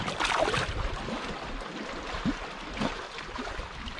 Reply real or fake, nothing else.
fake